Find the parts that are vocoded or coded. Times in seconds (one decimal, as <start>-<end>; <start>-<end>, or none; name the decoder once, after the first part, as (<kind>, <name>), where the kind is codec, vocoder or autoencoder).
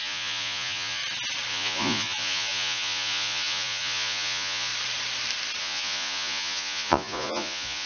0.0-1.0 (vocoder, Vocos); 1.5-4.7; 5.6-7.9